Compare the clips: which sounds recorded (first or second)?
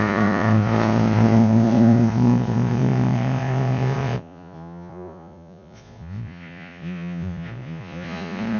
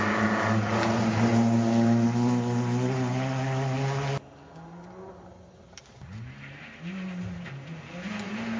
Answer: second